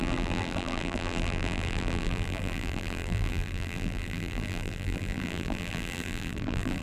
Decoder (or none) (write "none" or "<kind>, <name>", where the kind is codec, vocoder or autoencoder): vocoder, BigVGAN v2